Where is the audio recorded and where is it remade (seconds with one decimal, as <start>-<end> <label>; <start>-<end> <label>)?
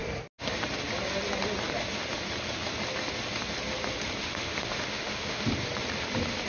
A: 0.0-4.2 recorded; 4.2-5.4 remade; 5.4-6.5 recorded